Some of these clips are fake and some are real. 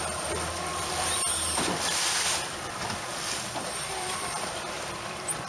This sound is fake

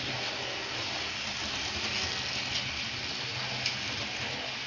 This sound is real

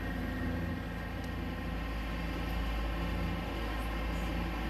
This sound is real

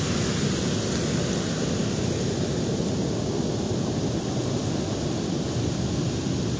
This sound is real